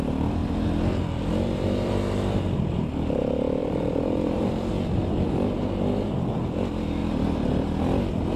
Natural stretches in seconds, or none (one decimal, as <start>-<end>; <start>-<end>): 0.0-0.4; 3.2-3.6; 4.4-8.4